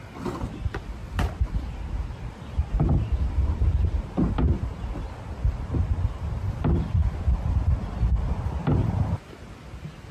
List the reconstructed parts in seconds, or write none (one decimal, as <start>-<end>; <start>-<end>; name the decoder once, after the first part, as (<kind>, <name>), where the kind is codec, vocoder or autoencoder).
6.4-7.7 (vocoder, BigVGAN v2)